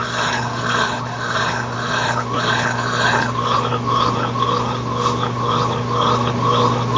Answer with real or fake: real